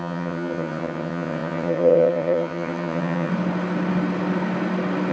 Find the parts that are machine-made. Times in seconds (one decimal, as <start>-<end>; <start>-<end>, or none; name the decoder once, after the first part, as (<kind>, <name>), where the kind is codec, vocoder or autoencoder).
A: 0.0-3.3 (vocoder, HiFi-GAN)